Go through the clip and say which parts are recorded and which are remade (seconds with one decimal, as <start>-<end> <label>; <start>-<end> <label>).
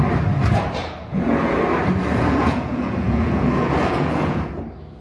0.0-0.8 recorded; 0.8-1.6 remade; 1.6-2.1 recorded; 2.1-4.5 remade; 4.5-5.0 recorded